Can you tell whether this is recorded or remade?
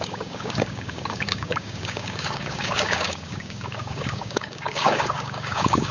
remade